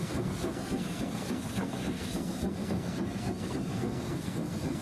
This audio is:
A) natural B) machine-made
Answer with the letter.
B